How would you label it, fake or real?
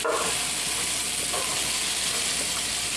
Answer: real